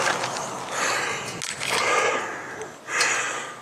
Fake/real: real